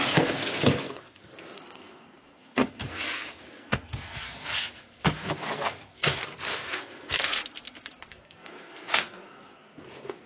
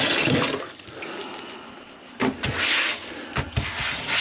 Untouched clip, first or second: second